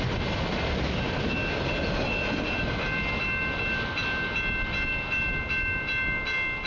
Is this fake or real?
real